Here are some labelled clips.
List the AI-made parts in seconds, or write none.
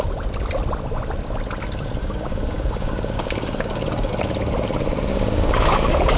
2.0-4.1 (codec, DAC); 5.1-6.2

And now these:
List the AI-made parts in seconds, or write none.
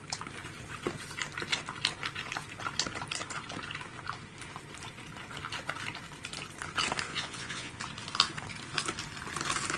7.1-7.8 (vocoder, Vocos)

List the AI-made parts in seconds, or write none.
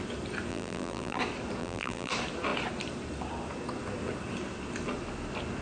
0.5-1.2 (vocoder, BigVGAN v2); 1.6-2.1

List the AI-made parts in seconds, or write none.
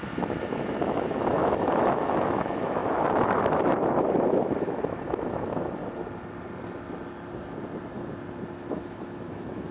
0.0-5.8 (autoencoder, DAC-VAE); 8.7-9.7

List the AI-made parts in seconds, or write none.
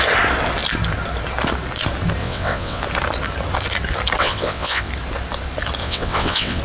2.2-2.8 (vocoder, WaveNeXt); 4.2-4.9; 5.8-6.6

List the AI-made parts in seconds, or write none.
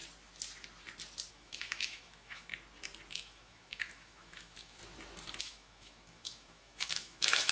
1.3-2.5 (autoencoder, DAC-VAE); 3.1-4.8; 5.4-7.5